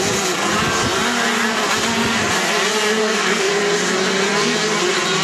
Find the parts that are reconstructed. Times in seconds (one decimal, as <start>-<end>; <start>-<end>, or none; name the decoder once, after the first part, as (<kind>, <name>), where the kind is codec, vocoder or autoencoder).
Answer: 3.0-3.5 (codec, SNAC)